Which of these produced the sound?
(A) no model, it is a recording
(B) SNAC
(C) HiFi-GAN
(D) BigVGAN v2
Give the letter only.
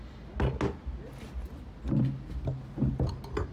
A